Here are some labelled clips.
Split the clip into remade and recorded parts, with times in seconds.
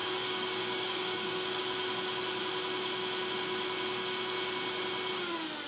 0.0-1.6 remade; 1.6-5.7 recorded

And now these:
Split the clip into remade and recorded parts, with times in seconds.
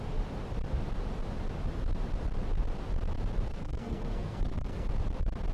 0.0-3.5 recorded; 3.5-4.9 remade; 4.9-5.5 recorded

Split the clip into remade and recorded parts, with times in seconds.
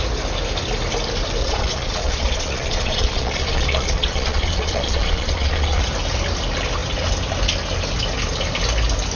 0.0-1.4 recorded; 1.4-5.8 remade; 5.8-9.2 recorded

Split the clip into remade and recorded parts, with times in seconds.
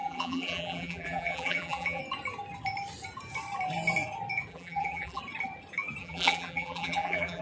0.0-2.0 remade; 2.0-4.5 recorded; 4.5-5.2 remade; 5.2-6.0 recorded; 6.0-7.4 remade